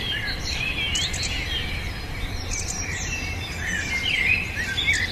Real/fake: real